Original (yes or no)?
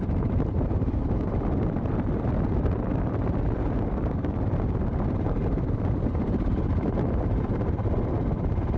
no